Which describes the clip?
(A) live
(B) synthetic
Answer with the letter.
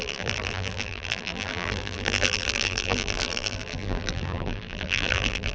B